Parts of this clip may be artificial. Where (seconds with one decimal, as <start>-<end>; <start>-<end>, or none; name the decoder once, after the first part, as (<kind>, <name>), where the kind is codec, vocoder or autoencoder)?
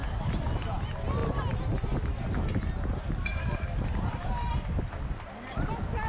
none